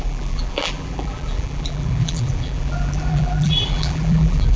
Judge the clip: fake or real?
fake